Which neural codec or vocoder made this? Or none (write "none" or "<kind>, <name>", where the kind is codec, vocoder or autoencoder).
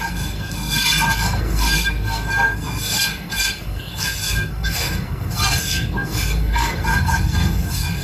codec, SNAC